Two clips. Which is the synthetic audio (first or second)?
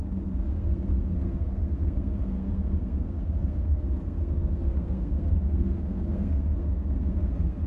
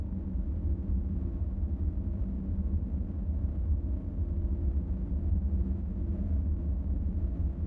first